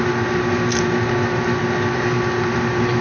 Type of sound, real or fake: real